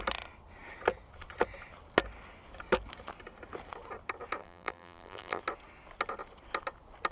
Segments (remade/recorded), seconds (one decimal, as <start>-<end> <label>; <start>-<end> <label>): 0.0-4.4 recorded; 4.4-5.4 remade; 5.4-7.1 recorded